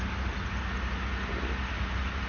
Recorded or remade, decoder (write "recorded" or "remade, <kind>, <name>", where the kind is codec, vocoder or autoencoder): recorded